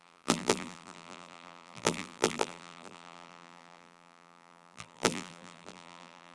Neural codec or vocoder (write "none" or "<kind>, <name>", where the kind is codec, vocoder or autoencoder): vocoder, BigVGAN v2